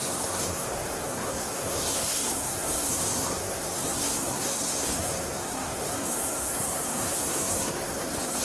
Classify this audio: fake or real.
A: fake